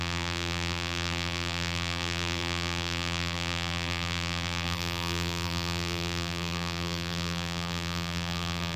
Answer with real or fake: fake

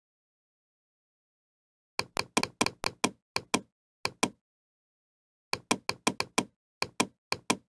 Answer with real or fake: real